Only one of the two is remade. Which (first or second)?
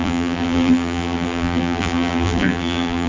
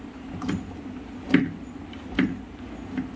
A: first